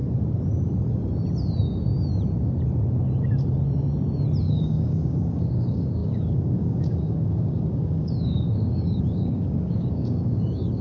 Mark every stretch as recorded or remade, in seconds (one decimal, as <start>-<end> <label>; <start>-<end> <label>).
0.0-4.4 recorded; 4.4-10.8 remade